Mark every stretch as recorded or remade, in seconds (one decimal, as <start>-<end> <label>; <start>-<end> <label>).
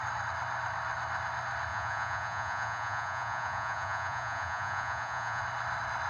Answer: 0.0-1.7 recorded; 1.7-5.4 remade; 5.4-6.1 recorded